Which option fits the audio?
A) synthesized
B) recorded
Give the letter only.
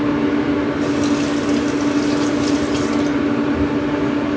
B